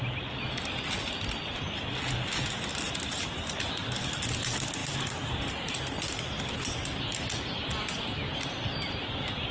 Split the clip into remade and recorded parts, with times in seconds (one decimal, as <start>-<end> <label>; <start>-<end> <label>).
0.0-9.5 recorded